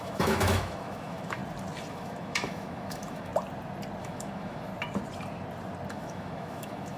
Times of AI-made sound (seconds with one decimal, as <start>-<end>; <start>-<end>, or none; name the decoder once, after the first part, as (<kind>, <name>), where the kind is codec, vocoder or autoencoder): 0.0-1.4 (autoencoder, DAC-VAE); 1.9-3.3; 4.0-4.7; 5.9-7.0